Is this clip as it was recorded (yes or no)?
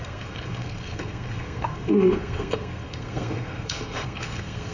no